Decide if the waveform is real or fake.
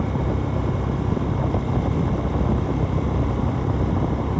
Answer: real